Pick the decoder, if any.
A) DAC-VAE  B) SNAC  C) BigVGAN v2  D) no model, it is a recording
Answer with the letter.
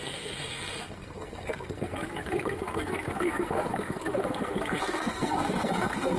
B